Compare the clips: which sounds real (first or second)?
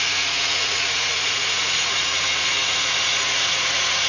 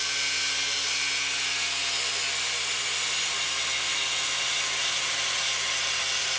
second